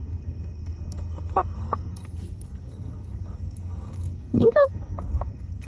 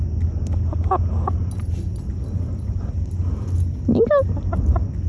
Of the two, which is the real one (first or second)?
second